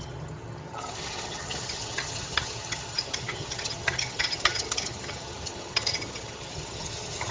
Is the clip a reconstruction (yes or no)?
yes